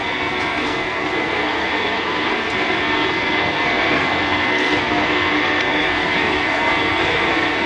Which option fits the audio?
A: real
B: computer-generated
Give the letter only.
B